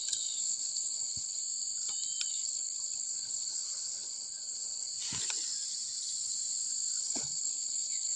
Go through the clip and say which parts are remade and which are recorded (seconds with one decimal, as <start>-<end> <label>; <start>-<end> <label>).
0.0-1.4 remade; 1.4-2.3 recorded; 2.3-4.9 remade; 4.9-7.0 recorded; 7.0-8.2 remade